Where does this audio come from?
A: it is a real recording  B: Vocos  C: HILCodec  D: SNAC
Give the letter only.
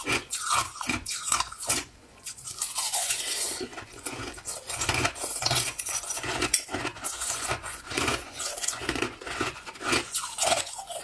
B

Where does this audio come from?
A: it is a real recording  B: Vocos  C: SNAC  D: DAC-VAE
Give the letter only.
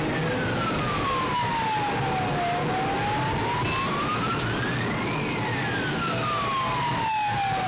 A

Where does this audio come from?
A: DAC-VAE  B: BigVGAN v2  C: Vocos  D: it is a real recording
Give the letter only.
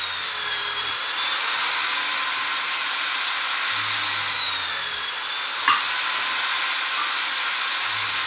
D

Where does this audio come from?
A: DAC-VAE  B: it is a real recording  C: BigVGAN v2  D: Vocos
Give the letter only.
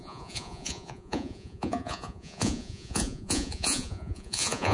D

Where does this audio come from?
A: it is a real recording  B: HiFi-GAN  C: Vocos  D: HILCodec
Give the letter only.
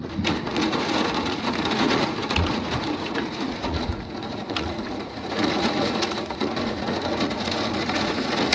C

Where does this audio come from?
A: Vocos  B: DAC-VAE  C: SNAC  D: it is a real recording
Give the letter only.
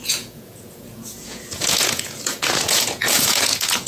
A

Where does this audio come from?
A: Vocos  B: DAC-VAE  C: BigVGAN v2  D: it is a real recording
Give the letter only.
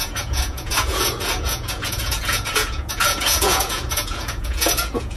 A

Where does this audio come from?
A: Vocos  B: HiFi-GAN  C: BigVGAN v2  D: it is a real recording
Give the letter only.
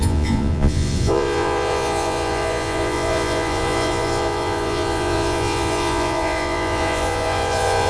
A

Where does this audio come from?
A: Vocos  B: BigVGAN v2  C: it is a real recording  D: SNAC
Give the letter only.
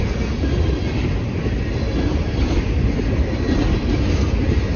C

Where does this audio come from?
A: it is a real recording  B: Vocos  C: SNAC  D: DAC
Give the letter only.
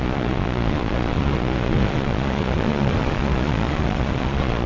B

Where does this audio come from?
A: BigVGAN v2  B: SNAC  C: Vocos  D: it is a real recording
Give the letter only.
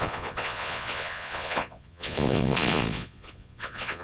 C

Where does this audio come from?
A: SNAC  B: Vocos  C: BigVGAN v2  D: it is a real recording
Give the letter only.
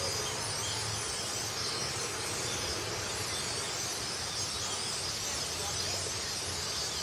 D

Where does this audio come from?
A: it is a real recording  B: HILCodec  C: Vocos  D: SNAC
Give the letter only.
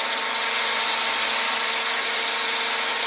A